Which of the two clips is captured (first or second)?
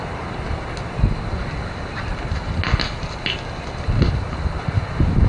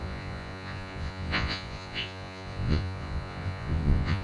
first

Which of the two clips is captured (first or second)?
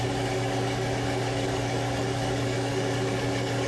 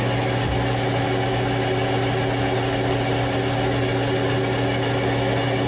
second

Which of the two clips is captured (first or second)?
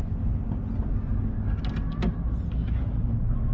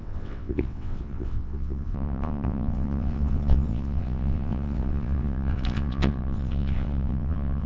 first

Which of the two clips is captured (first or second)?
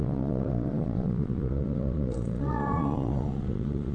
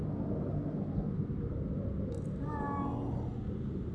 second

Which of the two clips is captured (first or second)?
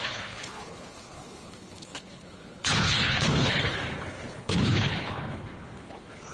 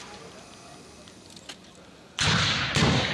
second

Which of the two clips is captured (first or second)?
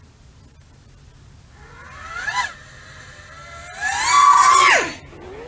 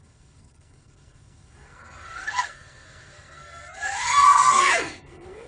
first